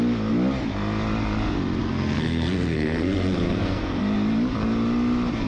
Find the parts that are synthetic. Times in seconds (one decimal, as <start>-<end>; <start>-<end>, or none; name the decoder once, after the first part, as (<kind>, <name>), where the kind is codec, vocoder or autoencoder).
1.8-4.0 (codec, SNAC)